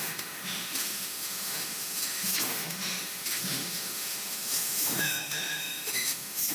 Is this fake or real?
fake